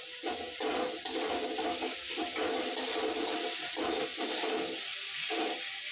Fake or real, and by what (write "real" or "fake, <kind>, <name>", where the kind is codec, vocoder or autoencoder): real